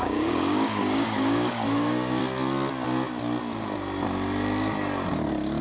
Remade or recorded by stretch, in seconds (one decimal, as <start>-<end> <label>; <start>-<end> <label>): 0.0-2.2 remade; 2.2-5.6 recorded